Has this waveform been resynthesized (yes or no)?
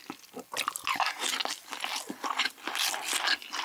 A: no